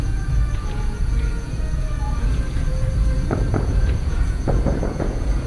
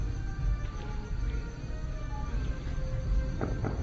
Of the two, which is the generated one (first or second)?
first